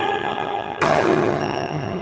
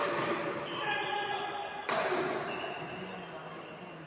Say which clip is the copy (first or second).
first